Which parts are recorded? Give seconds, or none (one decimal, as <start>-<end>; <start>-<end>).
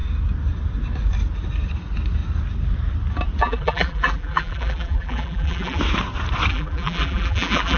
0.0-3.4; 5.8-6.5